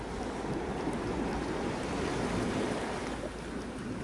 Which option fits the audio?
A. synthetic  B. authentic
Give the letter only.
B